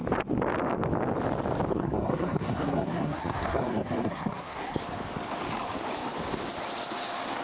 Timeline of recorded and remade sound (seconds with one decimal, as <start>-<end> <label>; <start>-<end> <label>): 0.0-1.7 recorded; 1.7-4.8 remade; 4.8-7.4 recorded